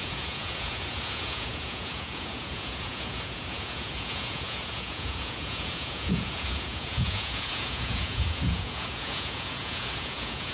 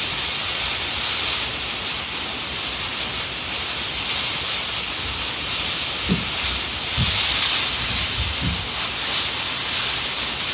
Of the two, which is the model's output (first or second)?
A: first